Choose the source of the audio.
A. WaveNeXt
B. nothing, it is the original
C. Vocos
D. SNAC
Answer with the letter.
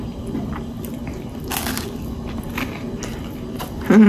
B